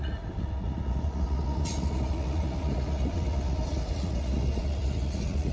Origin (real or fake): fake